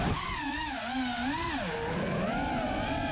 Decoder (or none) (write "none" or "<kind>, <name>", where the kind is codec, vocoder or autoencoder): none